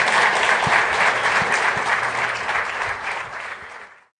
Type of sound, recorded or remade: remade